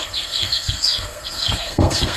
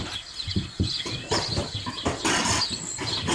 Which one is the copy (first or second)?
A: first